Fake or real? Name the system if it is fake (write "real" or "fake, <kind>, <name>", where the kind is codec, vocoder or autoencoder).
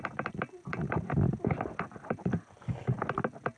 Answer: real